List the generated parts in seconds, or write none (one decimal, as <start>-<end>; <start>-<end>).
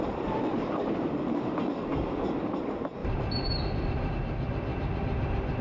0.0-1.9; 2.4-5.6